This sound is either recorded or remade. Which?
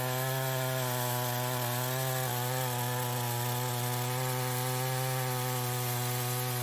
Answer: recorded